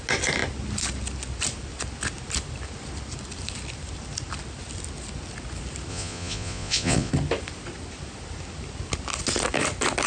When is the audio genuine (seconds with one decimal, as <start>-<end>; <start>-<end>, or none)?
0.0-5.9; 7.1-10.1